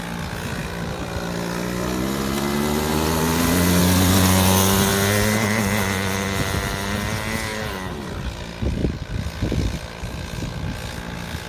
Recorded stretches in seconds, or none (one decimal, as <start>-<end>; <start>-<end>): 0.0-8.8; 10.1-11.5